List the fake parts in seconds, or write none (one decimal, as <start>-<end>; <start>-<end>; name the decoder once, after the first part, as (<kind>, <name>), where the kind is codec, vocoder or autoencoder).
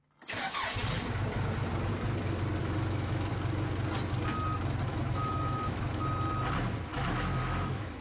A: 2.6-3.3 (autoencoder, DAC-VAE); 4.9-5.9; 6.9-8.0